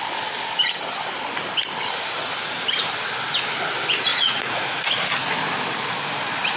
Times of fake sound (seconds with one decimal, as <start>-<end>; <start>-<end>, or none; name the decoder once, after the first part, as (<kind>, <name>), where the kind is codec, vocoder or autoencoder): 4.1-4.9 (vocoder, Vocos)